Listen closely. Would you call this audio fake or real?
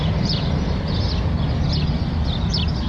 real